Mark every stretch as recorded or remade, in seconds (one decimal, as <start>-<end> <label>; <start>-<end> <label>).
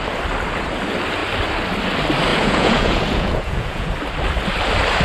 0.0-2.3 recorded; 2.3-3.9 remade; 3.9-5.0 recorded